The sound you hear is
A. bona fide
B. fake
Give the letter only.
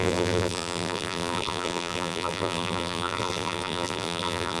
B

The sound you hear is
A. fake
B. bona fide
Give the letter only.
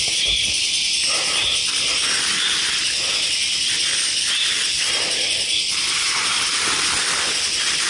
B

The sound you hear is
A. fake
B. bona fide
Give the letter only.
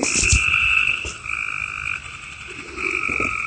B